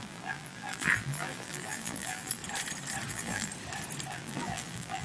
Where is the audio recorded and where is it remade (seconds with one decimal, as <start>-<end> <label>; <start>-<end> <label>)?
0.0-2.4 remade; 2.4-3.1 recorded; 3.1-3.5 remade; 3.5-4.1 recorded; 4.1-5.0 remade